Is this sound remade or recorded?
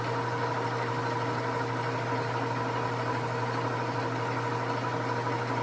recorded